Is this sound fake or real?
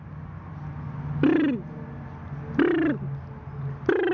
real